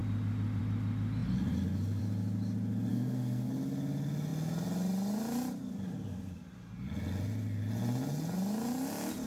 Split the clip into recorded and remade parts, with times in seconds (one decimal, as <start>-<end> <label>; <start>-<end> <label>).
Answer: 0.0-2.9 recorded; 2.9-3.5 remade; 3.5-9.3 recorded